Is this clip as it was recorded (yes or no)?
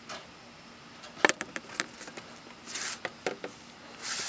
yes